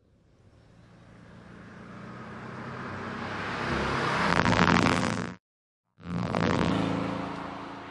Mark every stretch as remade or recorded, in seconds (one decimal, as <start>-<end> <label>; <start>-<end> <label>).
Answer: 0.0-4.3 recorded; 4.3-6.7 remade; 6.7-7.9 recorded